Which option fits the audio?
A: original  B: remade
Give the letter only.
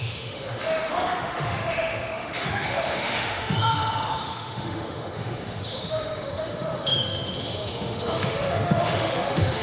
B